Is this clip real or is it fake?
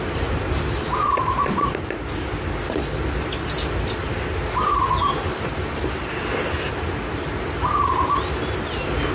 real